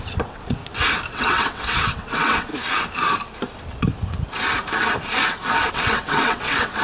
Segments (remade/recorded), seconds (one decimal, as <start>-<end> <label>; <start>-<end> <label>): 0.0-0.6 remade; 0.6-1.1 recorded; 1.1-2.5 remade; 2.5-5.7 recorded; 5.7-6.8 remade